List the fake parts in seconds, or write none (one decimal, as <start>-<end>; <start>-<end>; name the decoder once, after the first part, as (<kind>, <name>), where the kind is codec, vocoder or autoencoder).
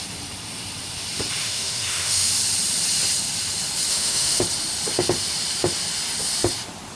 1.4-2.3 (autoencoder, DAC-VAE); 3.9-4.4